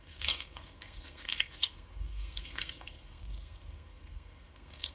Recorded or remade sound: remade